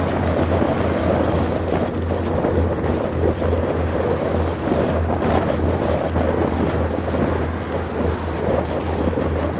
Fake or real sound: real